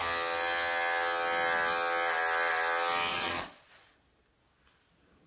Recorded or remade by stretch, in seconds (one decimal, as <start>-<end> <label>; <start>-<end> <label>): 0.0-3.1 recorded; 3.1-3.9 remade; 3.9-5.3 recorded